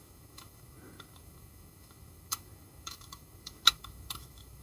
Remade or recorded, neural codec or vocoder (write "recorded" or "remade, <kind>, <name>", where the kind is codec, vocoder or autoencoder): remade, autoencoder, DAC-VAE